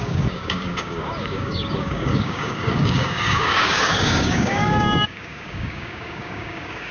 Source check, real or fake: fake